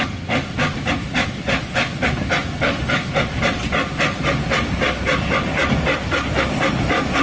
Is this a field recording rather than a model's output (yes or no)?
yes